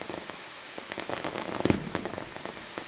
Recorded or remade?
remade